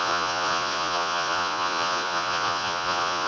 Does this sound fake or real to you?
fake